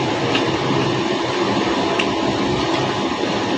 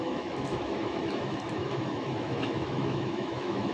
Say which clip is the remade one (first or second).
second